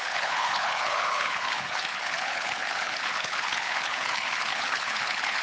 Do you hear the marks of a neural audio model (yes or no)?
yes